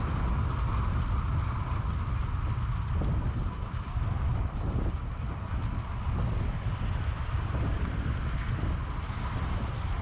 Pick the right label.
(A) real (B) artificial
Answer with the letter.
A